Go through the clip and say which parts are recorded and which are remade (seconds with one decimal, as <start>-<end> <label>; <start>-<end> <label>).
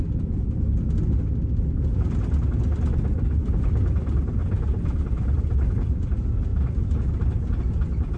0.0-4.4 recorded; 4.4-5.7 remade; 5.7-6.5 recorded; 6.5-7.6 remade; 7.6-8.2 recorded